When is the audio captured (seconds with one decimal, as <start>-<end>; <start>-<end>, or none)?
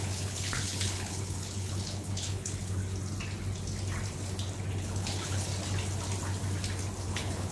2.8-4.7; 5.5-7.0